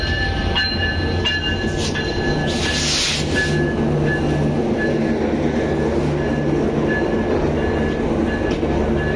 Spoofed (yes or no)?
no